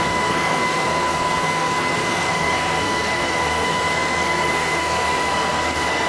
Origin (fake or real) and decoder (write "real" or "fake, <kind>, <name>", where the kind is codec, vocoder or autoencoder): fake, codec, SNAC